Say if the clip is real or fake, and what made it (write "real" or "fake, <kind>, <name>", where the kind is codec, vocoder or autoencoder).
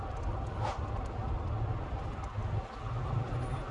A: real